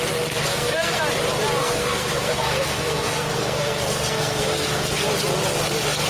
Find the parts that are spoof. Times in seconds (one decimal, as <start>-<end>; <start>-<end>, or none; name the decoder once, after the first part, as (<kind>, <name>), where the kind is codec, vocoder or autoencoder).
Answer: 0.5-1.0 (codec, SNAC); 1.6-4.9

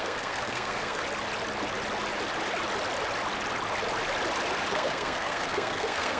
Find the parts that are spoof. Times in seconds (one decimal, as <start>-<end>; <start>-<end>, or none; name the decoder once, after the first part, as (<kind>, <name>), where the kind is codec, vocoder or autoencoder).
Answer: 0.0-1.0 (codec, SNAC); 4.7-6.2

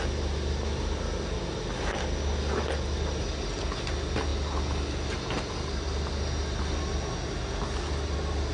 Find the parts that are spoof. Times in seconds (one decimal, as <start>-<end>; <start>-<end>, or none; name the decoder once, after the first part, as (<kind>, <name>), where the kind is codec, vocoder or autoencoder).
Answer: none

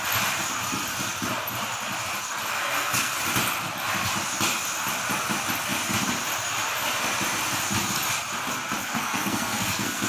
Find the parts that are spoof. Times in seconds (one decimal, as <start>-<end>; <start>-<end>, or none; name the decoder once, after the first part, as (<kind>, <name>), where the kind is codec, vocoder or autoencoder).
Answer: 2.5-3.2 (codec, SNAC); 8.8-10.1